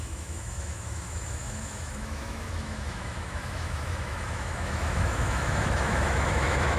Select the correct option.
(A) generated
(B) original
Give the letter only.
A